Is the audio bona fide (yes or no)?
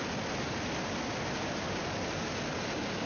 yes